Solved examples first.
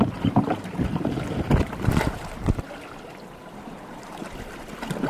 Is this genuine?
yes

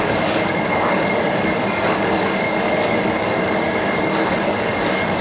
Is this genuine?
no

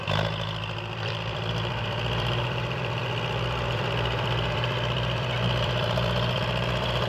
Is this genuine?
no